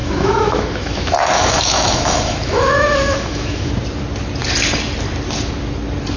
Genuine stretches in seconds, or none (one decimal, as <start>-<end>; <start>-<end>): 3.7-6.2